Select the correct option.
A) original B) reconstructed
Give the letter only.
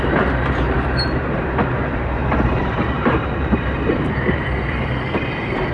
B